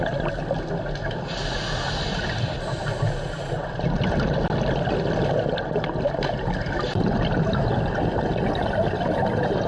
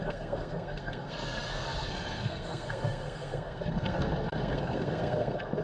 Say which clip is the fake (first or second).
second